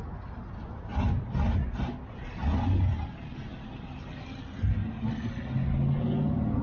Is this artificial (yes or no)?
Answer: no